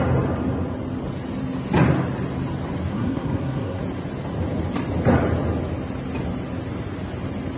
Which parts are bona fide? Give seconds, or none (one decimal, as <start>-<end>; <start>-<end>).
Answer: 0.0-2.9; 3.8-7.6